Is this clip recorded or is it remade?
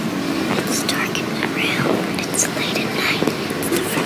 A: recorded